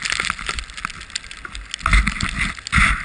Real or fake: real